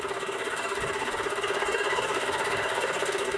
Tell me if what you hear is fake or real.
fake